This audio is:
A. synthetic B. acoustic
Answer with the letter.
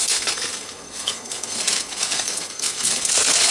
A